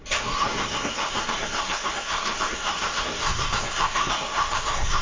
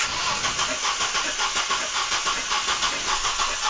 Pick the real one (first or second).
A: second